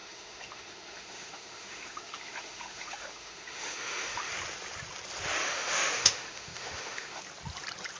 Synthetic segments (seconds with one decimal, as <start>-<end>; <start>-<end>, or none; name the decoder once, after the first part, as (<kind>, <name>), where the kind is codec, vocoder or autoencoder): 0.0-4.3 (autoencoder, DAC-VAE); 5.4-7.2